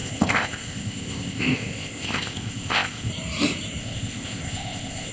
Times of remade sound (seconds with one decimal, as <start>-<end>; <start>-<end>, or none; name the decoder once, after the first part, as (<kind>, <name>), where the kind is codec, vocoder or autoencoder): 0.0-3.1 (codec, ZipCodec); 3.8-5.1